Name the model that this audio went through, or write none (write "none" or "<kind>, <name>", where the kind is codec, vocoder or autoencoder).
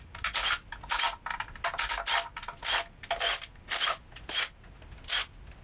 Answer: none